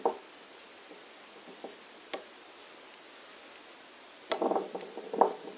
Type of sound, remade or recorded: recorded